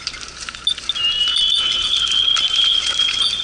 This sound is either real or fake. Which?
real